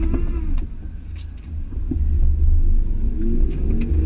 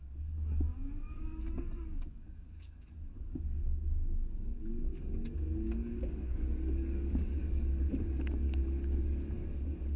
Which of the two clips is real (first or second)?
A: first